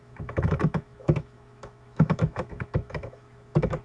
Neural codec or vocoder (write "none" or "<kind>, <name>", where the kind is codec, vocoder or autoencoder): autoencoder, DAC-VAE